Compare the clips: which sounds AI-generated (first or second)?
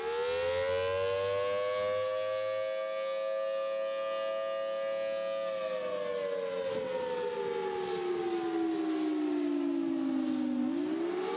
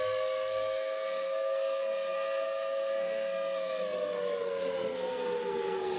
second